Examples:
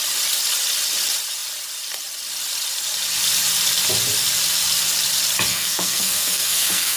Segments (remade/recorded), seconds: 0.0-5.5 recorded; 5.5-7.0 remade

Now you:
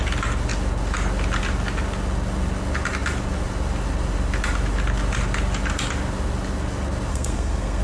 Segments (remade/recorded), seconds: 0.0-7.1 recorded; 7.1-7.8 remade

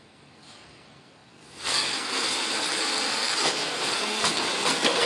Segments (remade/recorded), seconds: 0.0-5.1 remade

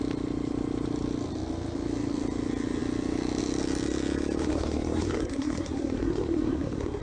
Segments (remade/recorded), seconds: 0.0-4.4 recorded; 4.4-7.0 remade

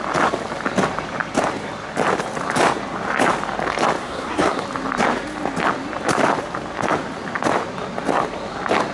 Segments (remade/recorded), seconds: 0.0-4.0 recorded; 4.0-4.6 remade; 4.6-8.9 recorded

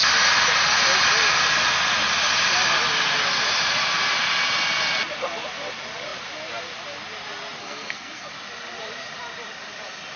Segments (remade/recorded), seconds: 0.0-7.6 recorded; 7.6-8.3 remade; 8.3-10.2 recorded

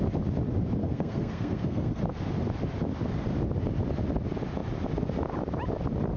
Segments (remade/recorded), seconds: 0.0-0.8 recorded; 0.8-2.0 remade; 2.0-6.2 recorded

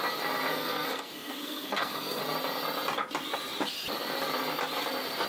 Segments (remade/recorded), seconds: 0.0-0.5 recorded; 0.5-2.2 remade; 2.2-5.3 recorded